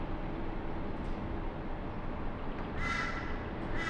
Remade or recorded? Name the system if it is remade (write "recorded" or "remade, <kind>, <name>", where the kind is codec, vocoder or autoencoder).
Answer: recorded